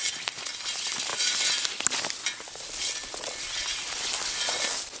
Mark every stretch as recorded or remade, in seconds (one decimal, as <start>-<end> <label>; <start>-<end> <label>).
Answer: 0.0-5.0 recorded